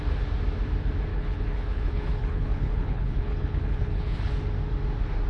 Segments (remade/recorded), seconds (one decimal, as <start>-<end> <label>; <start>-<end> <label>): 0.0-1.1 recorded; 1.1-4.3 remade; 4.3-5.3 recorded